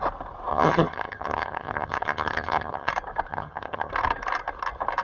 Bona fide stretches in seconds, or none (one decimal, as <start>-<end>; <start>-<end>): 0.0-0.5; 2.9-3.3; 3.9-5.0